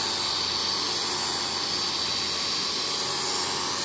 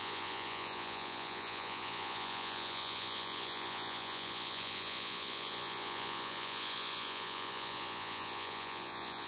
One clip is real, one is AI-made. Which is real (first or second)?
first